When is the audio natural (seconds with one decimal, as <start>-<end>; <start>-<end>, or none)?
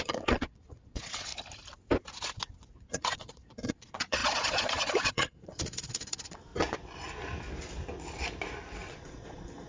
1.3-2.8; 6.5-8.9